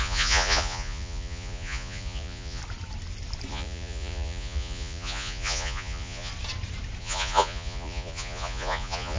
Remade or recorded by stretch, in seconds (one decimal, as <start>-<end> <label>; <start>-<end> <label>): 0.0-2.6 remade; 2.6-3.5 recorded; 3.5-6.3 remade; 6.3-7.0 recorded; 7.0-9.2 remade

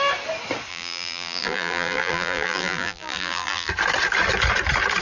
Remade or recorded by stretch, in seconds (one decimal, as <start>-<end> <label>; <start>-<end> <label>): 0.0-0.7 recorded; 0.7-3.7 remade; 3.7-5.0 recorded

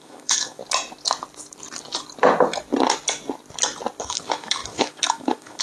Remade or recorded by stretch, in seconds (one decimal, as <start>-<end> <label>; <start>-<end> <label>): 0.0-0.6 remade; 0.6-4.0 recorded; 4.0-5.6 remade

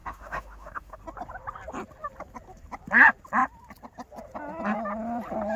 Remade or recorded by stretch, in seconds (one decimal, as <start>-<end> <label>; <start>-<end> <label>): 0.0-1.0 remade; 1.0-5.6 recorded

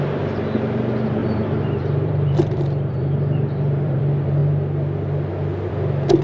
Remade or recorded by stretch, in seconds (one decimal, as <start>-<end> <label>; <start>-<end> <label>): 0.0-1.2 recorded; 1.2-4.0 remade; 4.0-6.2 recorded

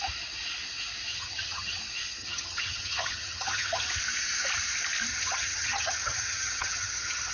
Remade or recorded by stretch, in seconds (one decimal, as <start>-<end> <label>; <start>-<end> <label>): 0.0-1.1 recorded; 1.1-1.8 remade; 1.8-2.2 recorded; 2.2-3.9 remade; 3.9-5.1 recorded; 5.1-7.3 remade